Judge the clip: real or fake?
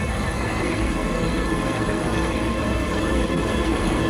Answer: fake